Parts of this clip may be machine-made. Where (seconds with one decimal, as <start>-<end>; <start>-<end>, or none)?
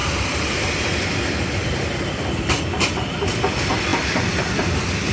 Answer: 0.8-5.1